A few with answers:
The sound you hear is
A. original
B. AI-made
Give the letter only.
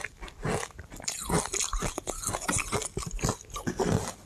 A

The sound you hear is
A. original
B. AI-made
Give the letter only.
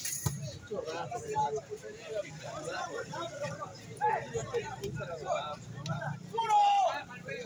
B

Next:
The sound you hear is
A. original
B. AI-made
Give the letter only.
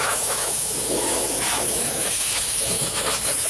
B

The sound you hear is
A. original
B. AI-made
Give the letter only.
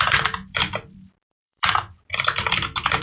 B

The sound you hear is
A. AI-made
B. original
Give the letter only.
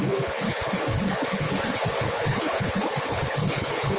A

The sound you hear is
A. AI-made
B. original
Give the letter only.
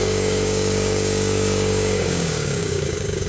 A